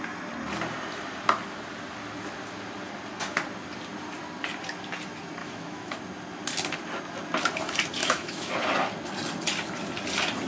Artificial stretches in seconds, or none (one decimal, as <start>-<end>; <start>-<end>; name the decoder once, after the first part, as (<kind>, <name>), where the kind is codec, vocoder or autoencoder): 5.4-6.0 (autoencoder, DAC-VAE); 8.0-8.5